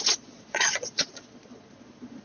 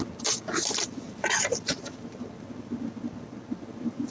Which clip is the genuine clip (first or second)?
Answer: second